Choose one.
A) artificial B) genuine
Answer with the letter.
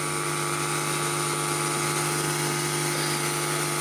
B